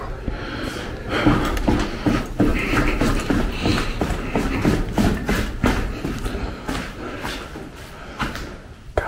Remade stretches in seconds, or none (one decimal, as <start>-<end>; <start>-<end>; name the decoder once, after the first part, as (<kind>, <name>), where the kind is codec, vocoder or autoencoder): 2.5-3.2 (vocoder, BigVGAN v2)